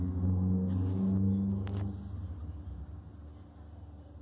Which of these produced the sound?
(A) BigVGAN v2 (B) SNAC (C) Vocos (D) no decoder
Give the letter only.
D